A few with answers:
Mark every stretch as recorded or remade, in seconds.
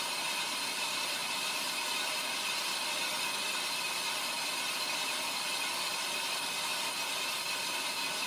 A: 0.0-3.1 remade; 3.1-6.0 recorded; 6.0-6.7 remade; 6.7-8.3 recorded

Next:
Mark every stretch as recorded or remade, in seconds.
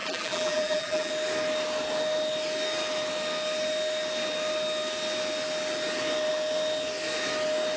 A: 0.0-1.1 remade; 1.1-7.8 recorded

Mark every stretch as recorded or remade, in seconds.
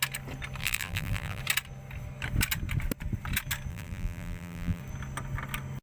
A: 0.0-0.6 recorded; 0.6-1.4 remade; 1.4-3.7 recorded; 3.7-4.8 remade; 4.8-5.8 recorded